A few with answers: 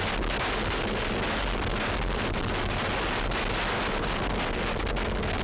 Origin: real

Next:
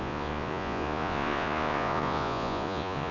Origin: fake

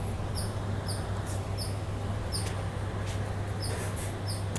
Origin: real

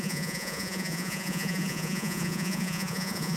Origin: fake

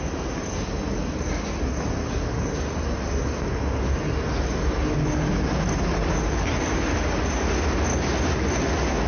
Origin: real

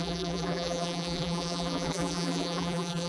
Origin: fake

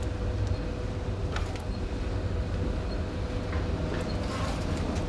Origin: real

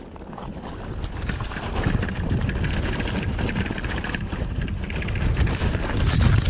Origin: real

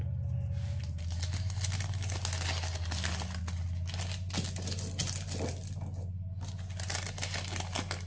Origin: real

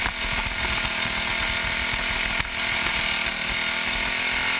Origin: real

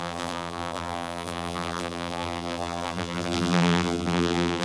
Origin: fake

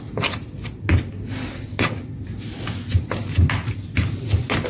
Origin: real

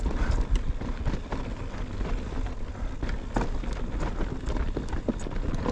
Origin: real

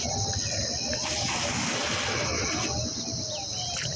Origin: real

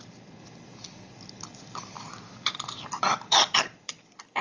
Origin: fake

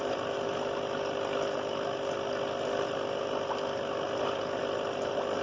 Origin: real